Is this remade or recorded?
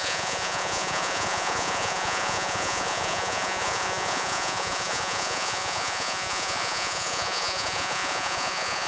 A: remade